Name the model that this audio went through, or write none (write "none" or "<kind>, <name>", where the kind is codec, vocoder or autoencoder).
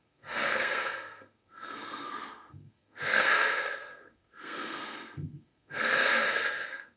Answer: codec, SNAC